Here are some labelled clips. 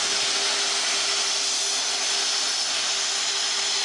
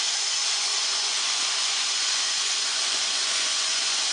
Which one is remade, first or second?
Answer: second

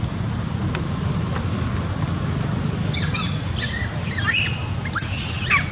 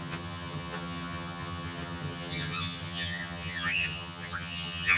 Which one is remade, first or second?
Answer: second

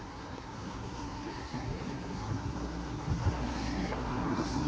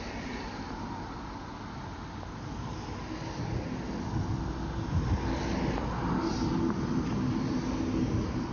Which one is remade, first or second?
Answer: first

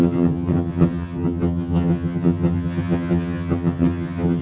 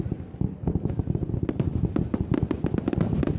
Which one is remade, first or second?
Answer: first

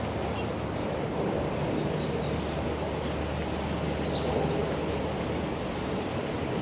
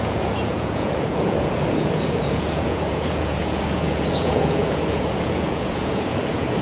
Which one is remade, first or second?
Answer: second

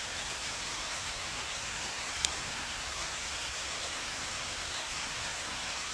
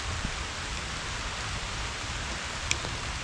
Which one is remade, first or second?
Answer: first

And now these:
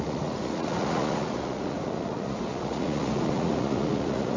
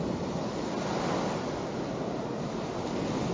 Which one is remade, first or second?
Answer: first